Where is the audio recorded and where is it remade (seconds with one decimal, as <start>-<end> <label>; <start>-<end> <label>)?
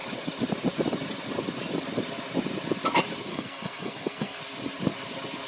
0.0-3.3 recorded; 3.3-4.4 remade; 4.4-5.5 recorded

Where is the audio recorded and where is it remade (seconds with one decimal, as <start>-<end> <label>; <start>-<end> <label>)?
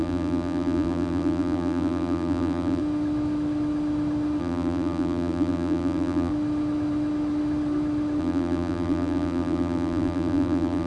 0.0-2.8 remade; 2.8-4.4 recorded; 4.4-6.3 remade; 6.3-8.2 recorded; 8.2-10.9 remade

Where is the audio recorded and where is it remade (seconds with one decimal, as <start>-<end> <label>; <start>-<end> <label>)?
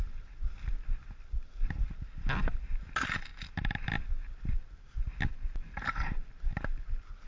0.0-7.3 recorded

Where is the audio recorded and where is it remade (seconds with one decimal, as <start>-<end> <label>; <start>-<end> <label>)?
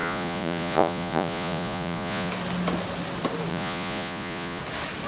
0.0-2.3 remade; 2.3-3.5 recorded; 3.5-4.6 remade; 4.6-5.1 recorded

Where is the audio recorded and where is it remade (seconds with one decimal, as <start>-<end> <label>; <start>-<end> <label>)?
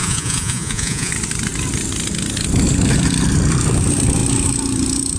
0.0-1.1 remade; 1.1-5.2 recorded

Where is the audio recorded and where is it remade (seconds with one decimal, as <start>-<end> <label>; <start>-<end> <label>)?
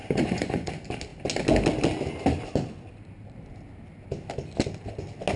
0.0-0.7 remade; 0.7-5.4 recorded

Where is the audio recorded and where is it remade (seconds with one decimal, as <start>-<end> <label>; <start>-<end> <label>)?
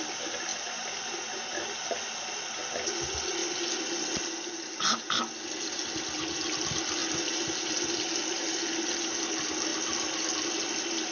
0.0-11.1 recorded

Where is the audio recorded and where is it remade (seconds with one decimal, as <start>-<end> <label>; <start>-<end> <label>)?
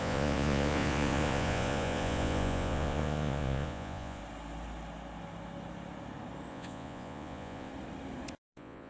0.0-4.2 remade; 4.2-6.5 recorded; 6.5-7.7 remade; 7.7-8.4 recorded; 8.4-8.9 remade